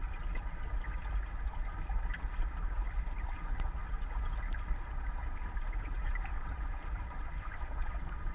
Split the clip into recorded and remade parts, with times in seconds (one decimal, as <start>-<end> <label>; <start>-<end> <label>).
0.0-2.6 recorded; 2.6-3.8 remade; 3.8-4.7 recorded; 4.7-8.3 remade